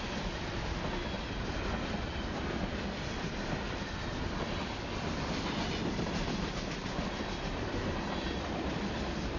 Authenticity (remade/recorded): recorded